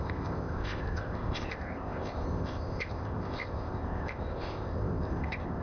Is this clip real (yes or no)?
no